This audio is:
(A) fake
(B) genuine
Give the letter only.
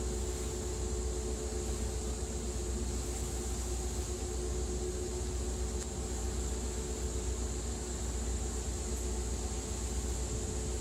B